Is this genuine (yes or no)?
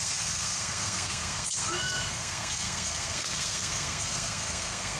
no